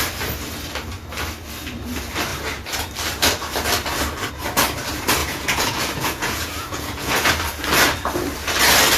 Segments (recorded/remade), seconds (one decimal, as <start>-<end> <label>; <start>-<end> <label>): 0.0-5.2 recorded; 5.2-7.3 remade; 7.3-9.0 recorded